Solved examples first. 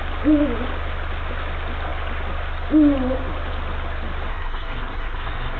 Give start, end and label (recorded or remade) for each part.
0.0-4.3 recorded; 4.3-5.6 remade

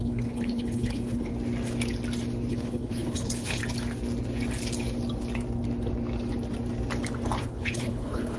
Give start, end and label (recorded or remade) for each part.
0.0-1.3 remade; 1.3-2.5 recorded; 2.5-3.6 remade; 3.6-7.4 recorded; 7.4-8.4 remade

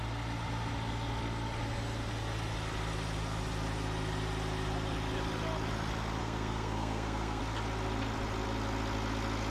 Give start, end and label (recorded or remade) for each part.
0.0-6.2 recorded; 6.2-7.4 remade; 7.4-9.5 recorded